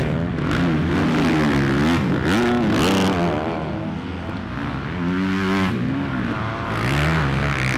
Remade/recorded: recorded